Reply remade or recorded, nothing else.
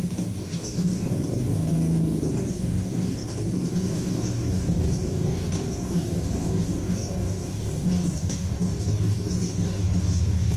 remade